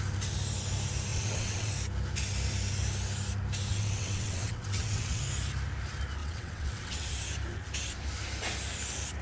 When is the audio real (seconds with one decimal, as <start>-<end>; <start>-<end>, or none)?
0.0-1.1; 1.7-3.7; 5.2-6.2; 7.1-9.2